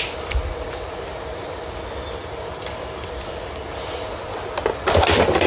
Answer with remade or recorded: recorded